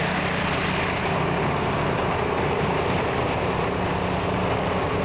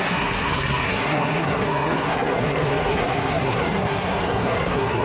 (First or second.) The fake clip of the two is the second